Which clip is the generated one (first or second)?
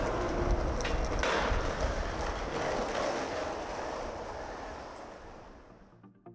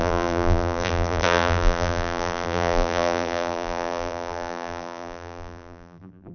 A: second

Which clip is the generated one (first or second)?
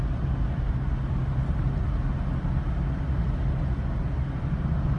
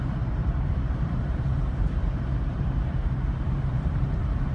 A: second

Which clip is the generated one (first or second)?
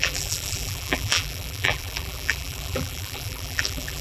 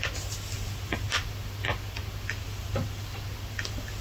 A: first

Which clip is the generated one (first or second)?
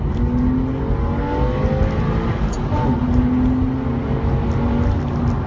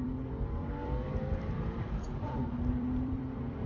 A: second